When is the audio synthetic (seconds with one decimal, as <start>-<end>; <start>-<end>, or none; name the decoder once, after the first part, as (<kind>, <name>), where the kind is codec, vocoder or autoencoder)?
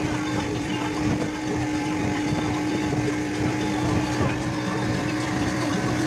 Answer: 0.0-6.1 (vocoder, BigVGAN v2)